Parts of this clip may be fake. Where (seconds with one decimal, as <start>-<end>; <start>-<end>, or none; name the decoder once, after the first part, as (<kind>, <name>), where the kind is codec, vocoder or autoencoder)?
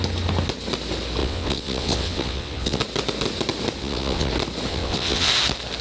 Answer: 1.2-2.8 (vocoder, WaveNeXt); 3.8-4.3; 4.7-5.3